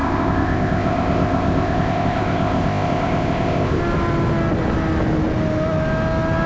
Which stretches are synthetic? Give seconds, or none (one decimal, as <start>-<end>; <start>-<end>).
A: 0.0-3.8